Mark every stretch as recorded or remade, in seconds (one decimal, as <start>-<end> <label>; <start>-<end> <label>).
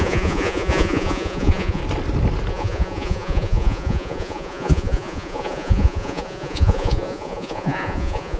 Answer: 0.0-1.8 remade; 1.8-2.5 recorded; 2.5-8.4 remade